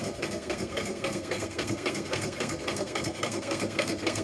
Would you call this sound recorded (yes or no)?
no